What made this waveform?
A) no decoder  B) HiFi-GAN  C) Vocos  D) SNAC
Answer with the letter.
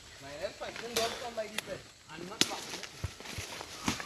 A